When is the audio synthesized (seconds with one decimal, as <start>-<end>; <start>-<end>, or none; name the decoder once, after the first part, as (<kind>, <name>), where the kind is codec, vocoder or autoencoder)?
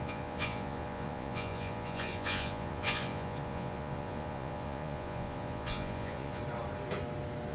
0.0-6.4 (vocoder, Vocos)